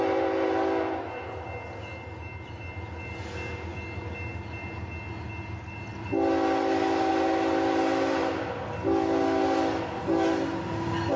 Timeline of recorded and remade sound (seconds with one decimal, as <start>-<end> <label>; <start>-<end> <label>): 0.0-11.2 recorded